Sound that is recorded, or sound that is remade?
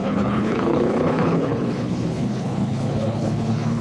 remade